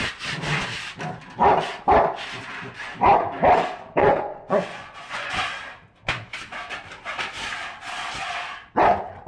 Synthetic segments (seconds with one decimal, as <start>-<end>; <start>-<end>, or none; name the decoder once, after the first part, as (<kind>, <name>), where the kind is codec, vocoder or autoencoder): 4.0-5.4 (vocoder, Vocos)